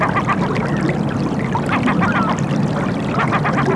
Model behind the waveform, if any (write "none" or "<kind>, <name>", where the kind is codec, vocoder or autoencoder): none